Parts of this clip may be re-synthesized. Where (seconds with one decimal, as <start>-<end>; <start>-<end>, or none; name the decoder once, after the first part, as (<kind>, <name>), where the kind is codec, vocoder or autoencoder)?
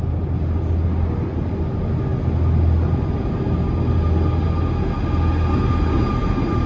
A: none